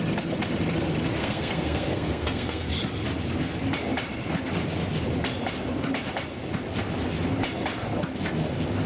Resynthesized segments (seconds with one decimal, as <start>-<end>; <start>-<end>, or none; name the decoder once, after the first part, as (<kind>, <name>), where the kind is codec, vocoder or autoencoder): 1.2-2.7 (codec, SNAC)